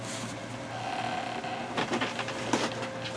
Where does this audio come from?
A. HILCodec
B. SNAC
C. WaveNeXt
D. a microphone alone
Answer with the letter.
D